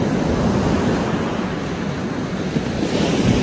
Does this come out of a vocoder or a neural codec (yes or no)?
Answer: no